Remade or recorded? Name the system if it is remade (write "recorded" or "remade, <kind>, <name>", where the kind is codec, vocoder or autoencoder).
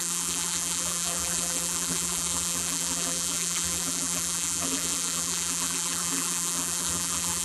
remade, vocoder, BigVGAN v2